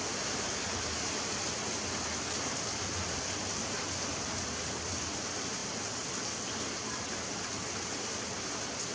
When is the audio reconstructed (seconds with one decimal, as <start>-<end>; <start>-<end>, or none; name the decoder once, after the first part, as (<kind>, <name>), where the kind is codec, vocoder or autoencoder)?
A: none